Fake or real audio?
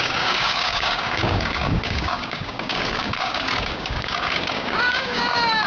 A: fake